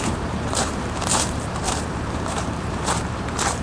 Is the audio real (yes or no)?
no